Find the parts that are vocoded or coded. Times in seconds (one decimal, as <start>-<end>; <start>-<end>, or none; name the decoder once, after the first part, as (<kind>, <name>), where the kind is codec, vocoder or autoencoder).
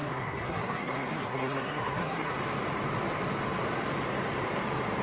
0.0-2.3 (codec, SNAC)